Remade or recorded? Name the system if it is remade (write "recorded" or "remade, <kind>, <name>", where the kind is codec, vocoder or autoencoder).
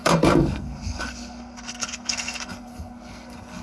remade, codec, SNAC